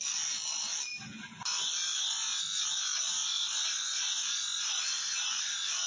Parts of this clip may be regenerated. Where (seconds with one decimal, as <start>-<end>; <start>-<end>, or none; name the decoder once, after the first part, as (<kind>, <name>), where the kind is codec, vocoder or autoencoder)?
none